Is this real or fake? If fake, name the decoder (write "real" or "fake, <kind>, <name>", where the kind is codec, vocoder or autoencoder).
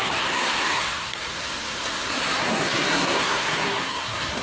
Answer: fake, codec, SNAC